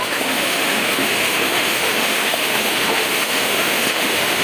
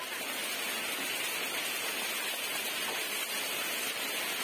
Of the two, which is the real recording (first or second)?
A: second